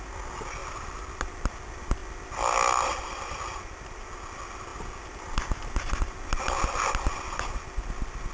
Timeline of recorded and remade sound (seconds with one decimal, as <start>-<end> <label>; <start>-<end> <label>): 0.0-0.6 recorded; 0.6-1.6 remade; 1.6-8.3 recorded